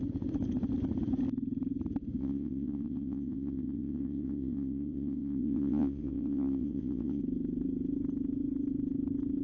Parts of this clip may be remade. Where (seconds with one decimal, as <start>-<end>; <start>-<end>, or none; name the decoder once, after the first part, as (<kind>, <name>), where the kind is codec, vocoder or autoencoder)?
2.2-7.2 (vocoder, WaveNeXt)